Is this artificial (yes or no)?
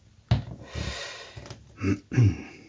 no